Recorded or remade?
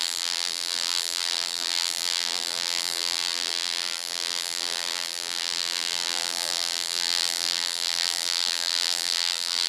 remade